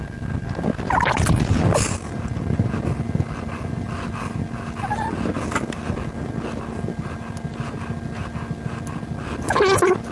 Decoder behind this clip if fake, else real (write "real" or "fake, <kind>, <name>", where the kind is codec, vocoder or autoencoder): real